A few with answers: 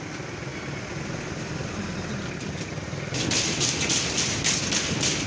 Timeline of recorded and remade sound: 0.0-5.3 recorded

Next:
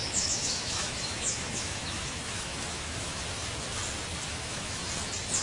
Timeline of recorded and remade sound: 0.0-3.2 remade; 3.2-4.3 recorded; 4.3-4.8 remade; 4.8-5.4 recorded

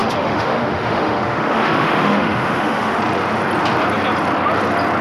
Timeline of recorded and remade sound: 0.0-3.0 remade; 3.0-5.0 recorded

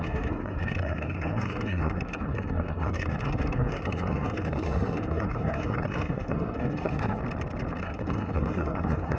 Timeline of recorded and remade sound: 0.0-7.2 remade; 7.2-7.8 recorded; 7.8-9.2 remade

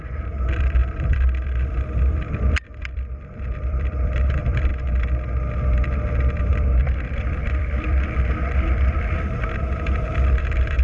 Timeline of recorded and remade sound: 0.0-4.7 remade; 4.7-6.4 recorded; 6.4-10.8 remade